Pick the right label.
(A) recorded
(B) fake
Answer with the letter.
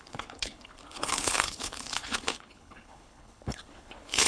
B